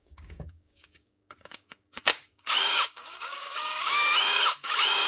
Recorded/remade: remade